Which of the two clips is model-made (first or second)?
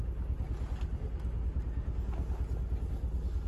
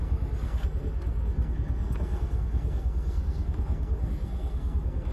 second